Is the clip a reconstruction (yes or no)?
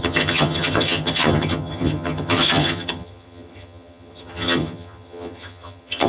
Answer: yes